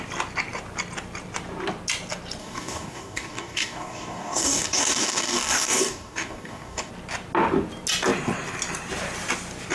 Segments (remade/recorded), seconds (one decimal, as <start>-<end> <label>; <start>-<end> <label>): 0.0-2.4 recorded; 2.4-6.9 remade; 6.9-9.7 recorded